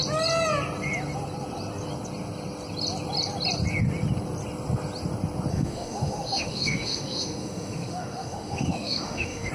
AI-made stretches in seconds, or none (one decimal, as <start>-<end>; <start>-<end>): 5.5-9.5